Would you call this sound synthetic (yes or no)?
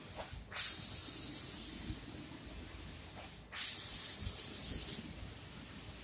no